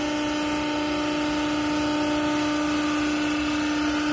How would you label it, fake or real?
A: real